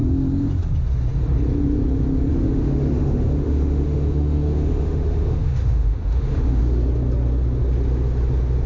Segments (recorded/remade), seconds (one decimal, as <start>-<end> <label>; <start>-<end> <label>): 0.0-2.3 recorded; 2.3-6.6 remade; 6.6-8.7 recorded